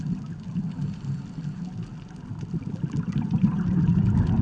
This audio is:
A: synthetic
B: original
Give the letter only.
B